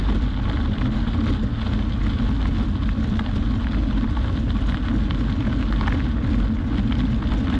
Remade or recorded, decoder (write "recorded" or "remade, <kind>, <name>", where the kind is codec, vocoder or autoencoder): recorded